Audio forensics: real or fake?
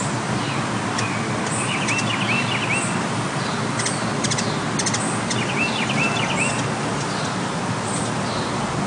real